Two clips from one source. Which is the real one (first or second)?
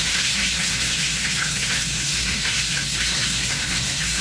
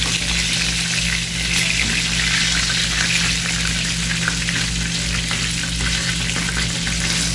second